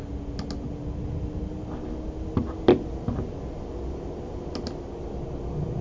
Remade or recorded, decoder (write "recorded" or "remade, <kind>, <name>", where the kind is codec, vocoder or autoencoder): recorded